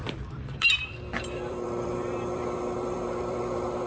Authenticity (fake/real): fake